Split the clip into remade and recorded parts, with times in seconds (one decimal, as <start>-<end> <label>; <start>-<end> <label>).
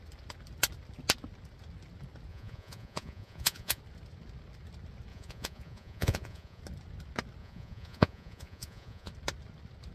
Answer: 0.0-2.3 recorded; 2.3-3.8 remade; 3.8-5.1 recorded; 5.1-6.6 remade; 6.6-7.4 recorded; 7.4-9.1 remade; 9.1-9.9 recorded